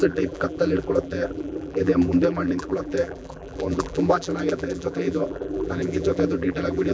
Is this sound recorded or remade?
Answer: remade